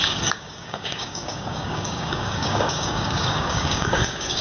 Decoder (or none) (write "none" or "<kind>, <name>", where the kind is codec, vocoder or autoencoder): codec, DAC